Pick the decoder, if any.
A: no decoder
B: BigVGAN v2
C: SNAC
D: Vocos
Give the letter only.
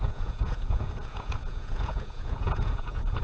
D